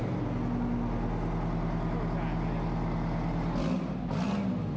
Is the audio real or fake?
real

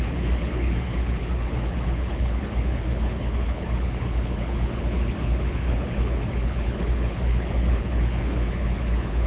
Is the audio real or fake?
fake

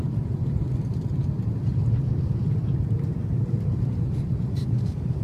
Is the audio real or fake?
fake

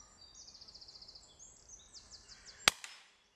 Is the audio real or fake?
real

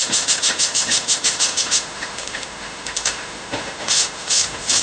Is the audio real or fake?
fake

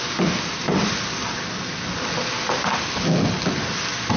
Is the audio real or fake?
real